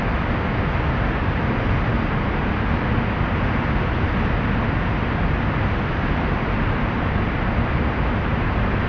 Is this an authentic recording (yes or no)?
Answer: yes